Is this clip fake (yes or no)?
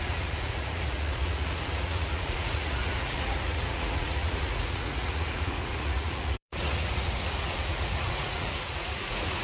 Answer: yes